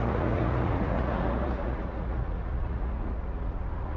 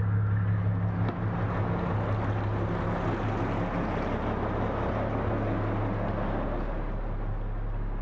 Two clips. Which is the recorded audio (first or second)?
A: second